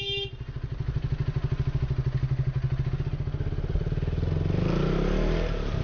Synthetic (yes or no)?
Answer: no